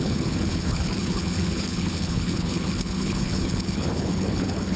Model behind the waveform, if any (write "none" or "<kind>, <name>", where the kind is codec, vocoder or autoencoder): codec, HILCodec